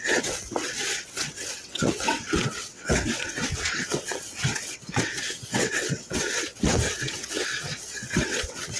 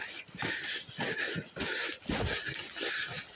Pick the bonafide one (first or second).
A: second